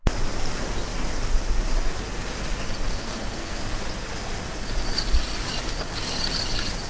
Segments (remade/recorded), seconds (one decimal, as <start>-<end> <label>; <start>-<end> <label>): 0.0-2.9 recorded; 2.9-3.6 remade; 3.6-6.9 recorded